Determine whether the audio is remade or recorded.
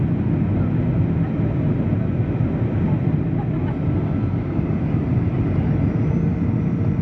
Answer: recorded